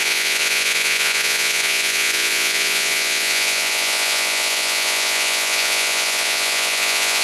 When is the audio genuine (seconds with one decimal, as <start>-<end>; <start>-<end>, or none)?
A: none